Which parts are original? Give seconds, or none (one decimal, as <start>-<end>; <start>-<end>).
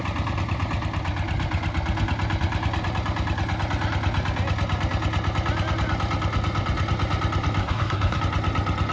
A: 0.0-7.6; 8.2-8.9